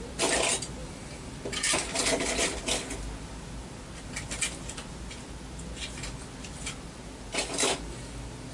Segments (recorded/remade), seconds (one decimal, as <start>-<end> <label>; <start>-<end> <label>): 0.0-8.5 recorded